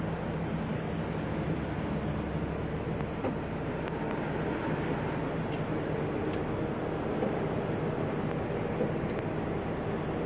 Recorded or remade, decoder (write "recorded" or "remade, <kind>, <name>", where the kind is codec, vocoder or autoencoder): recorded